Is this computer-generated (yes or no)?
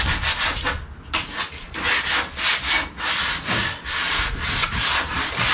no